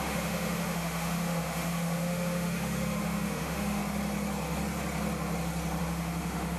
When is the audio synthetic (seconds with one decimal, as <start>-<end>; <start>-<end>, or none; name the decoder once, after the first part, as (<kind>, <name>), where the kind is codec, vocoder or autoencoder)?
0.0-3.8 (autoencoder, DAC-VAE); 5.8-6.6